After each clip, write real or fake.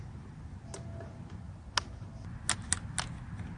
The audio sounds real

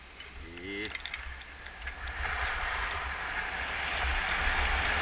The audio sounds real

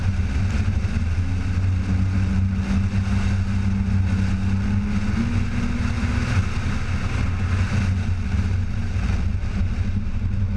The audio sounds real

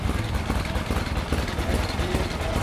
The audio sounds fake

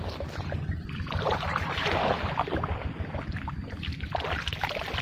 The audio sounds real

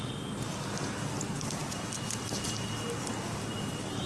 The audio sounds real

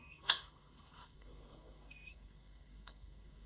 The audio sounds fake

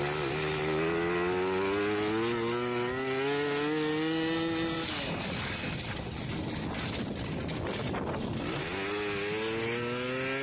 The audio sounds real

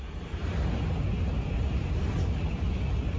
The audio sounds real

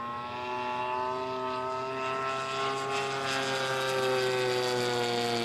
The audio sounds real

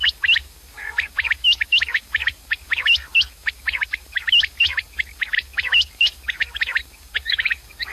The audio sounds fake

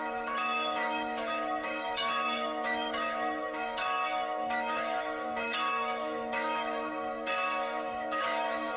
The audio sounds fake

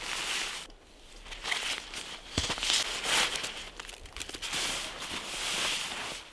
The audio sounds real